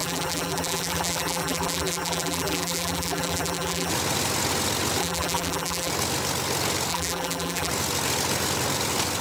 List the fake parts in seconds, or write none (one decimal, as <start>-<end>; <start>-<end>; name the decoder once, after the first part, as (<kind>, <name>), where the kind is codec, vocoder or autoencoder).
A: 0.0-3.9 (vocoder, BigVGAN v2); 5.0-5.9; 6.9-7.7